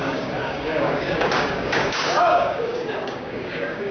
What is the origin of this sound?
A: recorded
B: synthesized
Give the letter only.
B